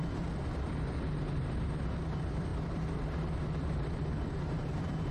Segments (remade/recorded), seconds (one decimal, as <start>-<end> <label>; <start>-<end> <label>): 0.0-5.1 remade

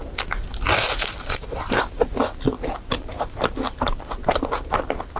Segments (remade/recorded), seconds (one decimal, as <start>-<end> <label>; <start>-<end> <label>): 0.0-0.9 recorded; 0.9-1.8 remade; 1.8-3.1 recorded; 3.1-4.8 remade; 4.8-5.2 recorded

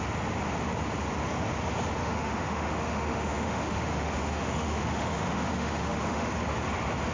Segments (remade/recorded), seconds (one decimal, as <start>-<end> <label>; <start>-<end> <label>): 0.0-2.0 recorded; 2.0-6.3 remade; 6.3-7.1 recorded

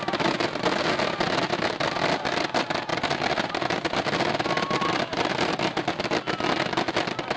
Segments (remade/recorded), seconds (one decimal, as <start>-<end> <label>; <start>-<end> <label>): 0.0-7.4 recorded

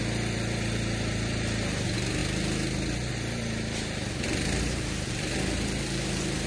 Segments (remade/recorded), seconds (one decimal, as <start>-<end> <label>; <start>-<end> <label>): 0.0-2.2 remade; 2.2-3.1 recorded; 3.1-6.5 remade

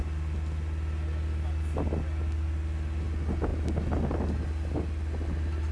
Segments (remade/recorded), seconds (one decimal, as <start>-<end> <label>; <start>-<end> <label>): 0.0-5.7 recorded

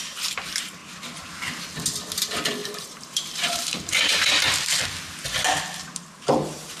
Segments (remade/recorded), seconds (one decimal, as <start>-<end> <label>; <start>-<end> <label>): 0.0-2.6 recorded; 2.6-4.3 remade; 4.3-6.8 recorded

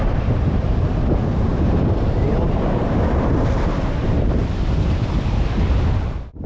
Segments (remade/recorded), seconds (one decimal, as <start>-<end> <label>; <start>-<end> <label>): 0.0-6.5 remade